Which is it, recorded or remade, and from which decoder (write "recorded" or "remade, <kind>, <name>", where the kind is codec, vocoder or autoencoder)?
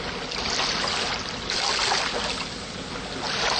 recorded